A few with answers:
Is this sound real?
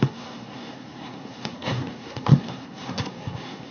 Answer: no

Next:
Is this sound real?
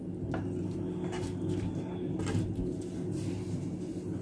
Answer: yes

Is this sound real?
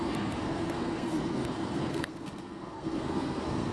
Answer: no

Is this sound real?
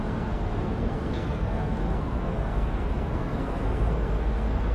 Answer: no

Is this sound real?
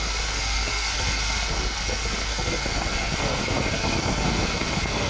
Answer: no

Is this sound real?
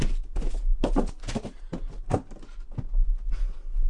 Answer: yes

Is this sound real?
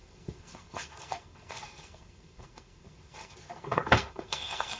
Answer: no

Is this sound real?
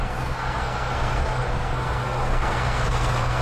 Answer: no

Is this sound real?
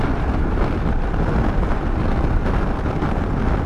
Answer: yes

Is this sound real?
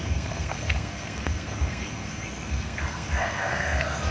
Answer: no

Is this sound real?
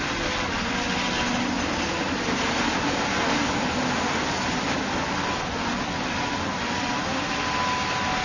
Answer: yes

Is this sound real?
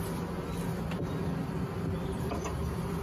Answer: yes